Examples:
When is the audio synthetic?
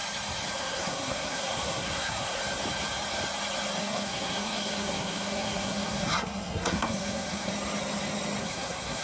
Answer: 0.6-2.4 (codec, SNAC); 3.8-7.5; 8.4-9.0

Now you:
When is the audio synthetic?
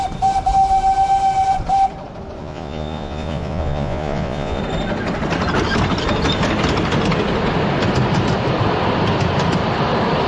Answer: 2.4-4.6 (vocoder, Vocos)